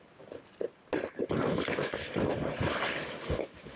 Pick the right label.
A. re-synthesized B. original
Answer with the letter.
B